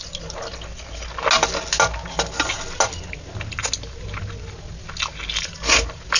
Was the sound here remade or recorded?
recorded